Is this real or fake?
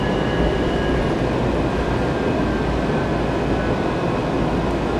real